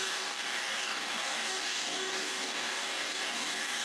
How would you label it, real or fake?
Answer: fake